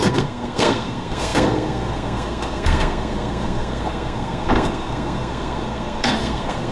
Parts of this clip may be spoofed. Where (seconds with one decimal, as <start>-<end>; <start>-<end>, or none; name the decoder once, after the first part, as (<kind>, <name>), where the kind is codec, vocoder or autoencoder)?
0.0-6.7 (codec, SNAC)